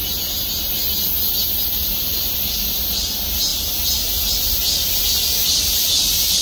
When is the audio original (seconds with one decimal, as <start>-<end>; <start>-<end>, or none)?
0.0-6.4